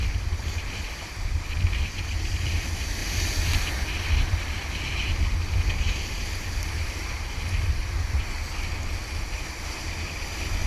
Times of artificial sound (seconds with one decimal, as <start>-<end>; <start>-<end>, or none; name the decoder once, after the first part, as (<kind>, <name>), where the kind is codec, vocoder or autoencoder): none